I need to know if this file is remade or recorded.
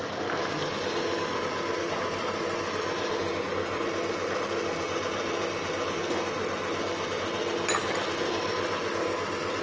recorded